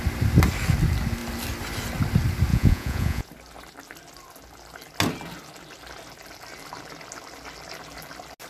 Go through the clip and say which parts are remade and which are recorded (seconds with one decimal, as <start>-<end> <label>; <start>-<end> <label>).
0.0-2.5 recorded; 2.5-3.3 remade; 3.3-8.5 recorded